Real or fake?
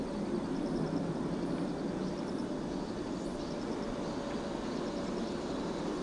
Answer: real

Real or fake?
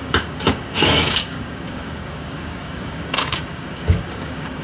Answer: fake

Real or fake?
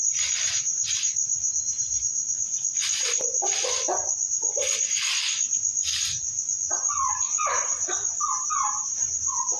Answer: real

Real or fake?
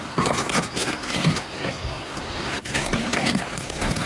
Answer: fake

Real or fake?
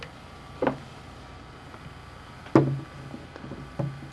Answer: real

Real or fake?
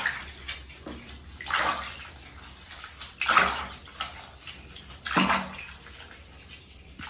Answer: real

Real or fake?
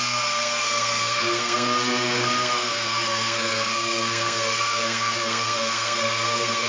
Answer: fake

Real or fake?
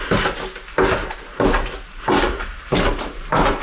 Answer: real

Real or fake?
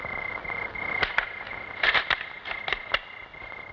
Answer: real